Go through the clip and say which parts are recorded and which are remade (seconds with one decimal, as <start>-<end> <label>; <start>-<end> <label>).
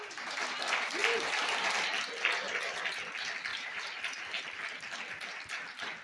0.0-1.0 recorded; 1.0-1.9 remade; 1.9-3.5 recorded; 3.5-4.0 remade; 4.0-6.0 recorded